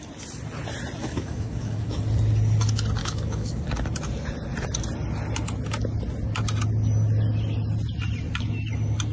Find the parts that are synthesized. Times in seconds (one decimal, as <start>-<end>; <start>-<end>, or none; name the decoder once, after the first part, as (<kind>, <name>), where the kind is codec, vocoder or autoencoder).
1.0-2.0 (autoencoder, DAC-VAE); 3.0-3.6